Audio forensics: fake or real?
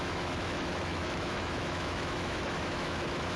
fake